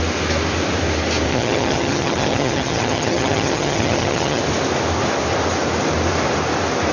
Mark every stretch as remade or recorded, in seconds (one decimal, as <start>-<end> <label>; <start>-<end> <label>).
0.0-1.3 recorded; 1.3-4.4 remade; 4.4-6.9 recorded